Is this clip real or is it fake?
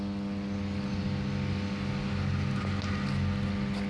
real